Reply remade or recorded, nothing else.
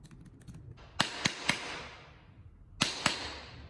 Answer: recorded